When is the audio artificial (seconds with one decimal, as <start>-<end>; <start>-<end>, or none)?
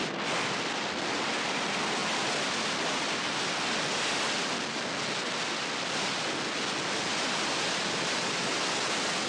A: none